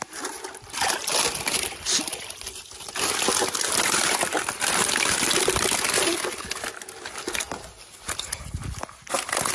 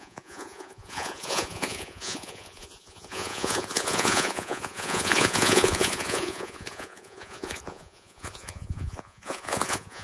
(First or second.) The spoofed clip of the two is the second